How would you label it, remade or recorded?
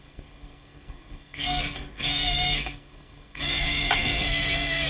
remade